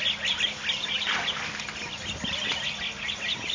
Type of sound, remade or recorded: recorded